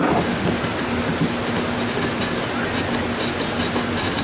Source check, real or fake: real